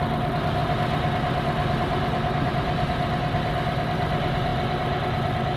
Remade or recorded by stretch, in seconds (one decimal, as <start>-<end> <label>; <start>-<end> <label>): 0.0-5.6 recorded